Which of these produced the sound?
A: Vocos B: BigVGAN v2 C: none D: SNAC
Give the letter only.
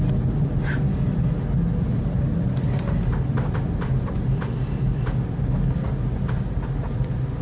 C